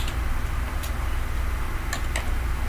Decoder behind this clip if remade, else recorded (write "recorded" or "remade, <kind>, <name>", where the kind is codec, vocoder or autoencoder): recorded